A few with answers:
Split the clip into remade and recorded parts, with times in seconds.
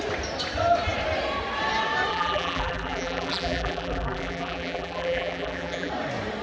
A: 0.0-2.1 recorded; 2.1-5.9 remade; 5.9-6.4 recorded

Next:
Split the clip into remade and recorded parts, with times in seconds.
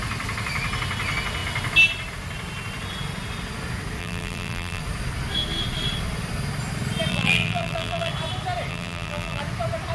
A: 0.0-4.0 recorded; 4.0-4.8 remade; 4.8-7.1 recorded; 7.1-8.1 remade; 8.1-8.7 recorded; 8.7-9.4 remade; 9.4-9.9 recorded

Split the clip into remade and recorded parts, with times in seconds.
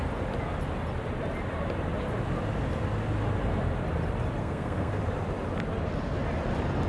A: 0.0-4.4 recorded; 4.4-5.0 remade; 5.0-6.9 recorded